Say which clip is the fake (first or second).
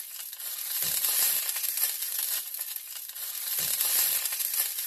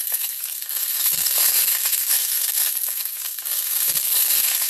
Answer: second